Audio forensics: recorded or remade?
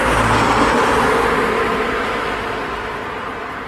recorded